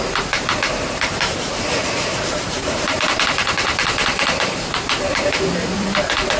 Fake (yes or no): yes